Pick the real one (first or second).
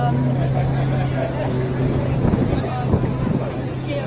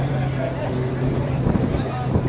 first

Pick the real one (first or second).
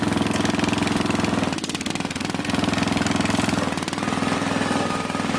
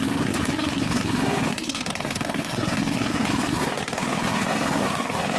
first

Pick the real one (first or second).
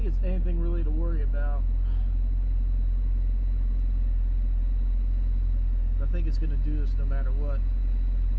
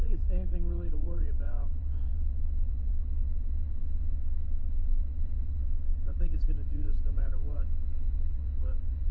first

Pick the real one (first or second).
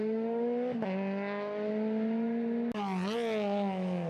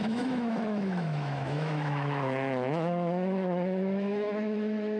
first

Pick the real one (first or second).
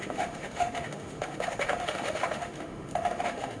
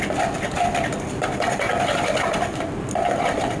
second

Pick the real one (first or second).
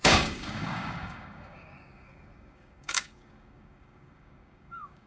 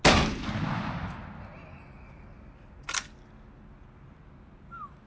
second